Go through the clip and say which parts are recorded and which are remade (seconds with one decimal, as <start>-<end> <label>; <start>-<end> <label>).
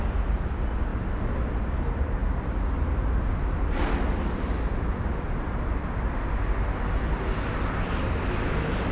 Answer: 0.0-8.9 recorded